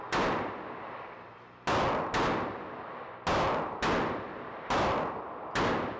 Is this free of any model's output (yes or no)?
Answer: yes